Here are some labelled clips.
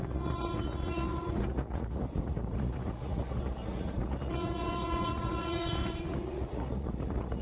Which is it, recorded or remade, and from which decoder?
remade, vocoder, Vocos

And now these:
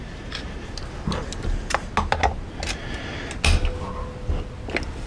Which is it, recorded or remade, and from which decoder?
recorded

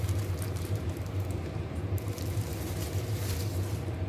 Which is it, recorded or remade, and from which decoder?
remade, vocoder, BigVGAN v2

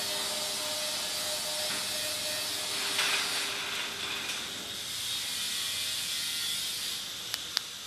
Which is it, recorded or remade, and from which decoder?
recorded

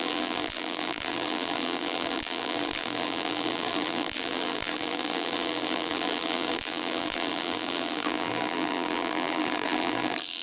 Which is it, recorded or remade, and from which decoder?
remade, vocoder, BigVGAN v2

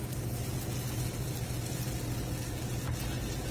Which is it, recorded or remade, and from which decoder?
recorded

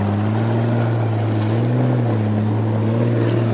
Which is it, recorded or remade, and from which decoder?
recorded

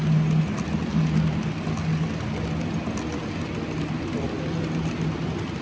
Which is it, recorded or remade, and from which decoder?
recorded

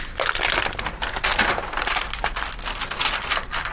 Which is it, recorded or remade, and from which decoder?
remade, vocoder, BigVGAN v2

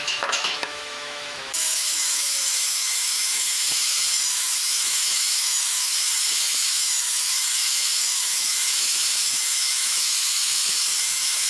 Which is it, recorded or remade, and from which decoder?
remade, autoencoder, DAC-VAE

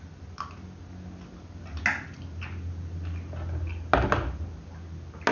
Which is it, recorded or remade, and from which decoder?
recorded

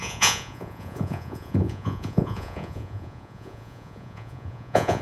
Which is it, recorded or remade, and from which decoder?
remade, vocoder, Vocos